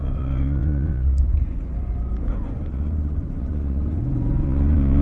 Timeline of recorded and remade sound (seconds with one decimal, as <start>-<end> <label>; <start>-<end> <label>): 0.0-5.0 remade